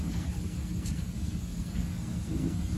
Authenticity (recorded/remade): remade